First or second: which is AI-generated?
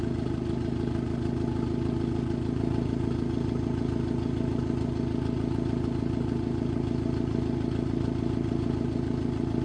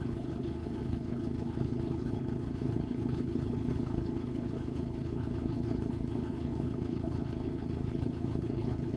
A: second